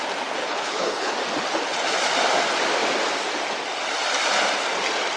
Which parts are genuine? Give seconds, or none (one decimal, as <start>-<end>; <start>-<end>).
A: 0.0-0.4; 1.1-5.2